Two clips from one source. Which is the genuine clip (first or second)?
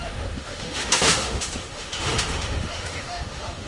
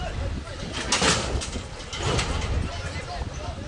second